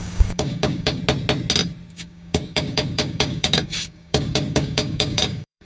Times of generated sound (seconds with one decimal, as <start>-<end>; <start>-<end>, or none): 0.0-1.0; 1.9-5.6